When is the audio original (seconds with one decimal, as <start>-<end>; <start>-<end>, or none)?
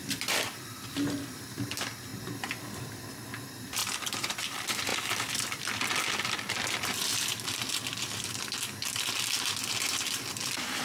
4.9-5.4